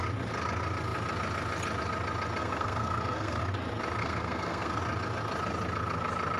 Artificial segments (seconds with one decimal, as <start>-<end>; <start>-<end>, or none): 2.4-3.4; 4.0-4.8